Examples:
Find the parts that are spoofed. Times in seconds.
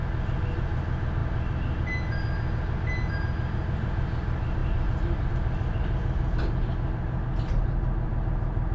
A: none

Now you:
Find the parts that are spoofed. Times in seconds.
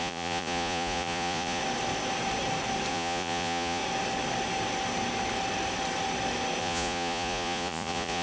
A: 0.0-1.6; 2.9-3.8; 6.6-8.2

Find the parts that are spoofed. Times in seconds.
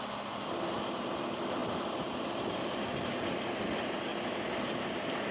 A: none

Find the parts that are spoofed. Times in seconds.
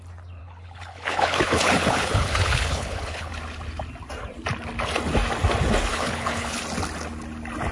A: 0.4-3.3; 5.9-6.6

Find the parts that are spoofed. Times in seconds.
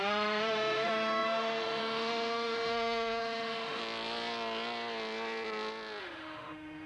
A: 0.0-3.8; 6.0-6.9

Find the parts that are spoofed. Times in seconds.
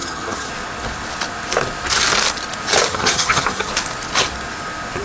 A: 0.0-0.5; 2.9-3.7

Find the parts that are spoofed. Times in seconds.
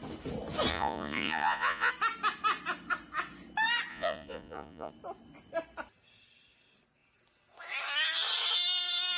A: 0.7-1.9; 3.9-4.9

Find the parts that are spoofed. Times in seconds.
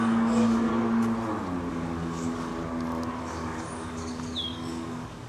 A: 0.0-0.7; 1.7-2.5; 3.2-5.3